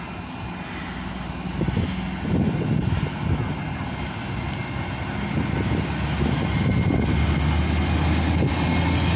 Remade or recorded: recorded